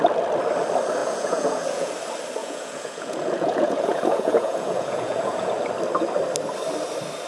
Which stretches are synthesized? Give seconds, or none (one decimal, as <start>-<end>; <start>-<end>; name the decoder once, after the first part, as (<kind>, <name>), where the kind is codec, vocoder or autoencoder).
1.0-1.9 (vocoder, Vocos); 2.4-5.5